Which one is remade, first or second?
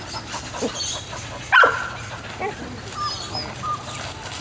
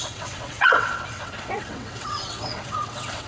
second